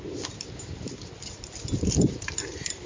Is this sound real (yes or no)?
yes